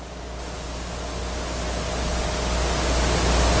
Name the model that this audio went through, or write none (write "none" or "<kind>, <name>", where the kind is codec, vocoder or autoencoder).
none